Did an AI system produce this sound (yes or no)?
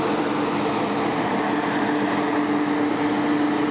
no